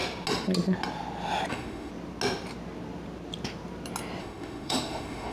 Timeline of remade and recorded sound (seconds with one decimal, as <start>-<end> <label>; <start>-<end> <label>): 0.0-1.5 recorded; 1.5-1.9 remade; 1.9-4.2 recorded; 4.2-5.3 remade

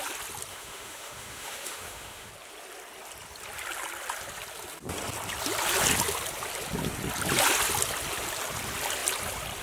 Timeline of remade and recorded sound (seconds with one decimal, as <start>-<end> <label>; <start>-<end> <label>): 0.0-0.5 recorded; 0.5-2.3 remade; 2.3-9.6 recorded

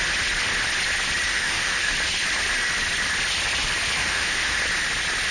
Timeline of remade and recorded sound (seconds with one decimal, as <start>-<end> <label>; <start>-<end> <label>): 0.0-1.3 recorded; 1.3-1.9 remade; 1.9-4.0 recorded; 4.0-4.6 remade; 4.6-5.3 recorded

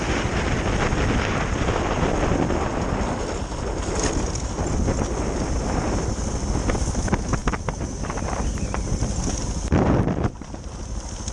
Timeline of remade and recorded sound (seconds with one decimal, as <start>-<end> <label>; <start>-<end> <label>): 0.0-11.3 recorded